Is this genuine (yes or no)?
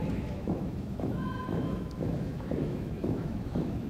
no